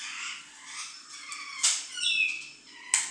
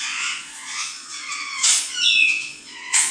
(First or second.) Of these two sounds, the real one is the first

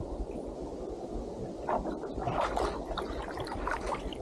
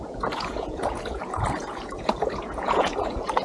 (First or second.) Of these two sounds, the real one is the first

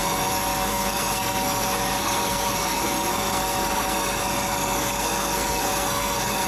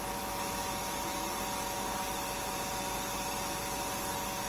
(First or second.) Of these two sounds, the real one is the second